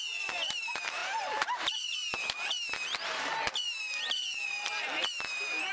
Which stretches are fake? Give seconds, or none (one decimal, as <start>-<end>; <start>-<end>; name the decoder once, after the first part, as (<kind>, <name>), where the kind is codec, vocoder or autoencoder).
1.0-1.6 (vocoder, BigVGAN v2)